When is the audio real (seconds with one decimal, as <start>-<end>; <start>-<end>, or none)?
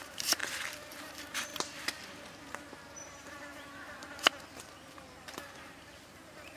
0.4-0.9; 1.5-3.0